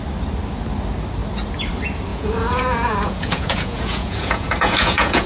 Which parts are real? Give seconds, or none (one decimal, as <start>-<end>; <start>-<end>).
0.0-2.1